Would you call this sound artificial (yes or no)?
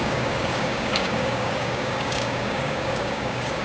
yes